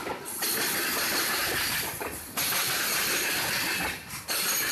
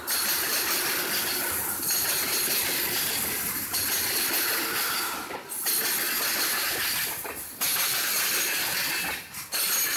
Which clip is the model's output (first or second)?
first